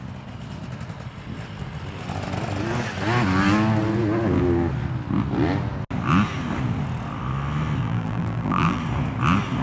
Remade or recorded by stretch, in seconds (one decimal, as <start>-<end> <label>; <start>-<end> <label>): 0.0-7.8 recorded; 7.8-8.8 remade; 8.8-9.6 recorded